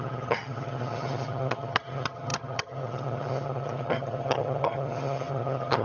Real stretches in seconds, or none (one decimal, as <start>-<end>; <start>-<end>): none